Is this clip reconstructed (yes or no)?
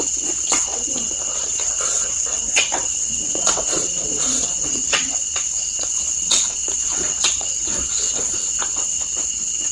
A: yes